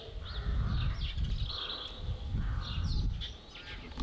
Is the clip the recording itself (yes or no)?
yes